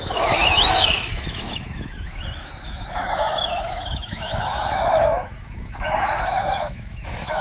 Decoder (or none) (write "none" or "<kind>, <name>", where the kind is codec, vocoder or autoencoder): autoencoder, DAC-VAE